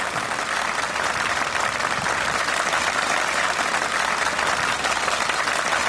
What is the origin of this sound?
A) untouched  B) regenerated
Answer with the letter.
A